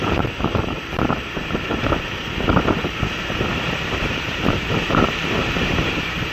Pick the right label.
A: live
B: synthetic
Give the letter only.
B